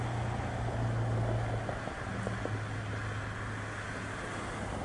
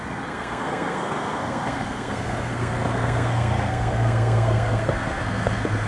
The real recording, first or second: first